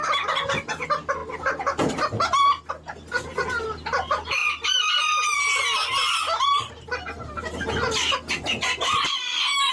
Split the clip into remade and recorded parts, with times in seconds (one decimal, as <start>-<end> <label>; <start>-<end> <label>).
0.0-6.2 recorded; 6.2-7.6 remade; 7.6-9.7 recorded